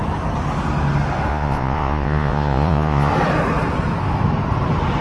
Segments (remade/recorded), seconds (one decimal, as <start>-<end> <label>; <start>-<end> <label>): 0.0-1.3 recorded; 1.3-3.1 remade; 3.1-5.0 recorded